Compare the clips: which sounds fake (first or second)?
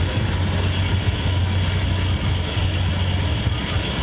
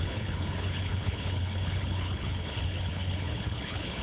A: second